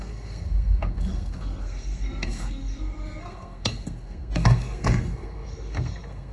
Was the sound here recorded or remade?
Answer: remade